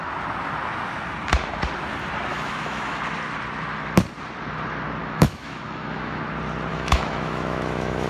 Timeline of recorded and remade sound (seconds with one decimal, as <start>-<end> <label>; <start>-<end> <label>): 0.0-2.3 recorded; 2.3-3.0 remade; 3.0-5.0 recorded; 5.0-6.2 remade; 6.2-6.7 recorded; 6.7-8.1 remade